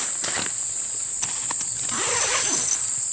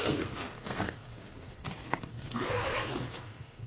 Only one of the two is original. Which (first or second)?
first